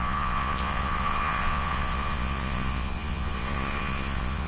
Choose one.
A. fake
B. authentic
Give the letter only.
A